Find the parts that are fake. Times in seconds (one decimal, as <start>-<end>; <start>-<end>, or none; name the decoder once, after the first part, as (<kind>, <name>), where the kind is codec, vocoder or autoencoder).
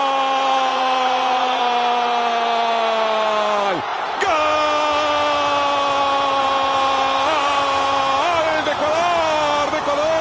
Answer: 0.7-1.6 (vocoder, Vocos)